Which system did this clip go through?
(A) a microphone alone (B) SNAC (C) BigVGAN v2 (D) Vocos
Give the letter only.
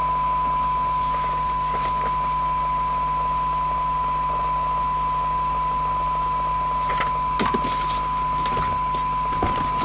A